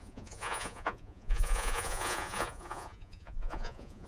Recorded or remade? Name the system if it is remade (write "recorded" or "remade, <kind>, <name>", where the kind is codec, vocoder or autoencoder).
remade, vocoder, Vocos